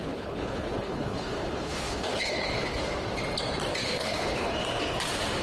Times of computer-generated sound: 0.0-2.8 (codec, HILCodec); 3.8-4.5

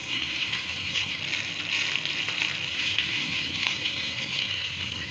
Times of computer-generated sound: 0.0-1.2 (codec, SNAC); 2.7-5.1

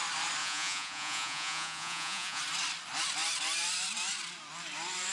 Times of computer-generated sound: 0.4-2.4 (vocoder, Vocos)

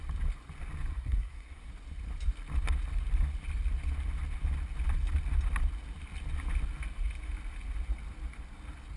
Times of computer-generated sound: 0.9-1.7 (codec, SNAC)

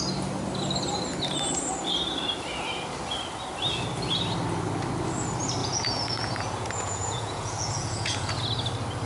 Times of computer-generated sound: 5.6-8.4 (vocoder, Vocos)

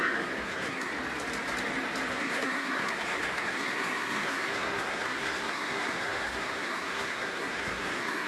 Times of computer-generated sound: 0.0-0.9 (codec, SNAC); 2.1-8.3

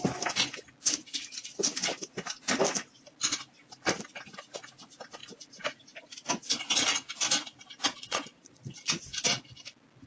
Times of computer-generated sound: 8.0-9.0 (vocoder, Vocos)